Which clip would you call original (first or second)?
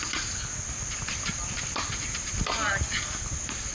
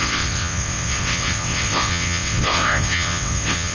first